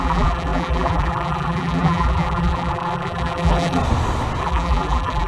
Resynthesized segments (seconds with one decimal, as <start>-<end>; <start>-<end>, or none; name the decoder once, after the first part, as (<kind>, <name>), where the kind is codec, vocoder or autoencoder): 0.0-3.8 (vocoder, BigVGAN v2); 4.4-5.3